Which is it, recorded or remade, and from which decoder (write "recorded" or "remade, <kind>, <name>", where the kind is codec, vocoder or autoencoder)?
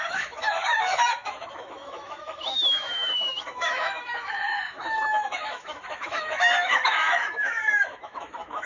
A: remade, autoencoder, DAC-VAE